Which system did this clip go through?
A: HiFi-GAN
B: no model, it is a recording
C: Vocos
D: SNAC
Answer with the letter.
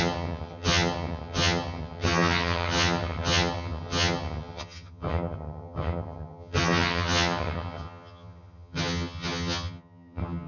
A